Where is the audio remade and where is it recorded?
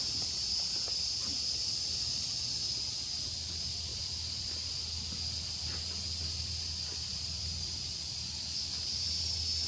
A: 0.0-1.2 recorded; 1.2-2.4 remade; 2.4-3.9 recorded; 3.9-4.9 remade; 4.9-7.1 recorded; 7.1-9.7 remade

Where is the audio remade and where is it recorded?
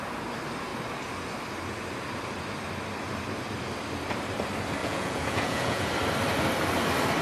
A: 0.0-4.8 recorded; 4.8-5.9 remade; 5.9-7.2 recorded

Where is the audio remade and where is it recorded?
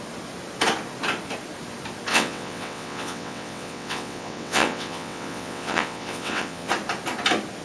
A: 0.0-2.1 recorded; 2.1-6.7 remade; 6.7-7.6 recorded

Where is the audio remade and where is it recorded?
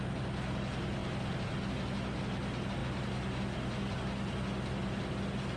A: 0.0-5.6 recorded